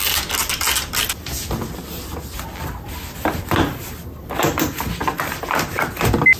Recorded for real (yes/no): yes